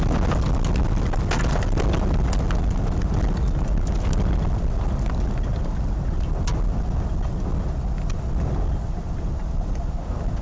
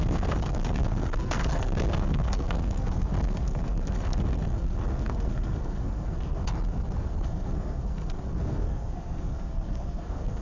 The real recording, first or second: first